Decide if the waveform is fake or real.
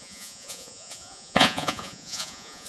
fake